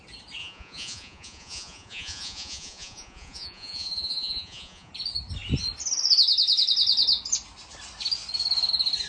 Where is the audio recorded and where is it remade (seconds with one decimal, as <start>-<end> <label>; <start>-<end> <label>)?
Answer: 0.0-0.4 recorded; 0.4-4.9 remade; 4.9-9.1 recorded

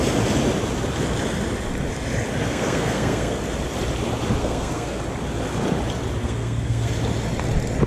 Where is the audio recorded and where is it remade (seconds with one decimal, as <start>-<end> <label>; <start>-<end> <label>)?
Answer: 0.0-2.4 recorded; 2.4-3.4 remade; 3.4-4.4 recorded; 4.4-5.0 remade; 5.0-6.2 recorded; 6.2-6.9 remade; 6.9-7.9 recorded

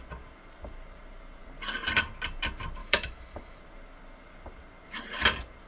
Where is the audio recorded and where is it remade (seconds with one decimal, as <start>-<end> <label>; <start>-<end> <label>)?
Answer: 0.0-2.8 recorded; 2.8-3.6 remade; 3.6-5.7 recorded

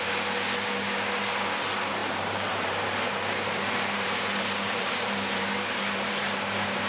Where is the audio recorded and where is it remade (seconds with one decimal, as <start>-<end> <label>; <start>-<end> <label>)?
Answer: 0.0-2.0 recorded; 2.0-6.1 remade; 6.1-6.9 recorded

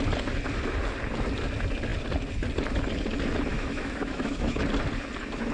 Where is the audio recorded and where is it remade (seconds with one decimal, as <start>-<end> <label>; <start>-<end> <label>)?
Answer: 0.0-3.5 recorded; 3.5-4.6 remade; 4.6-5.5 recorded

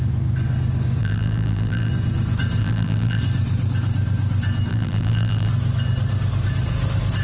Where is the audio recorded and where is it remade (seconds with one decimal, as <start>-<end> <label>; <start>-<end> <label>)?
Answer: 0.0-1.0 recorded; 1.0-1.9 remade; 1.9-2.6 recorded; 2.6-3.2 remade; 3.2-4.7 recorded; 4.7-5.5 remade; 5.5-7.2 recorded